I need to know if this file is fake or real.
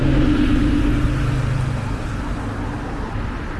real